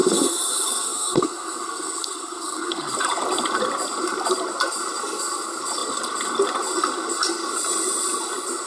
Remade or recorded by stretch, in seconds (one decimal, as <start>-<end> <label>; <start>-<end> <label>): 0.0-2.9 remade; 2.9-8.7 recorded